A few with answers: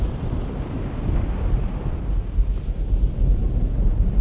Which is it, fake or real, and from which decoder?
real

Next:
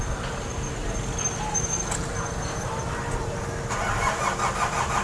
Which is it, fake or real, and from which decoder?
real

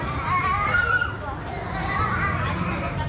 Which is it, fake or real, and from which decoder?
real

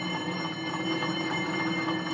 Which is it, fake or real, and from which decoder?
real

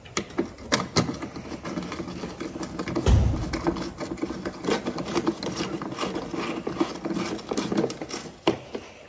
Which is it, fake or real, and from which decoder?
real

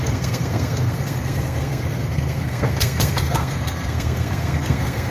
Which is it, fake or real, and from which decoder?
fake, codec, SNAC